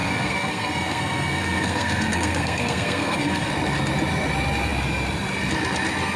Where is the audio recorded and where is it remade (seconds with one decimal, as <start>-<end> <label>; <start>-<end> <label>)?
0.0-3.5 remade; 3.5-6.2 recorded